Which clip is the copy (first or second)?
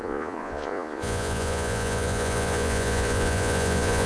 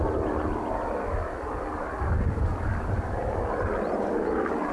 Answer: first